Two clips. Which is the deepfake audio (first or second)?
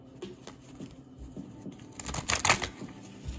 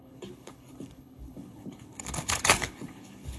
second